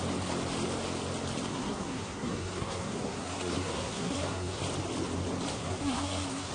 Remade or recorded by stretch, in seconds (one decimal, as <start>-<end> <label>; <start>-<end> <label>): 0.0-1.5 recorded; 1.5-4.6 remade; 4.6-5.5 recorded; 5.5-6.5 remade